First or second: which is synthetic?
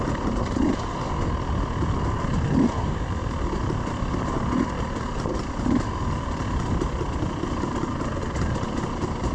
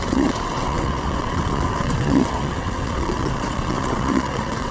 second